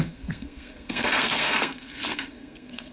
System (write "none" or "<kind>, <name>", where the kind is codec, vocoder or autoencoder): codec, SNAC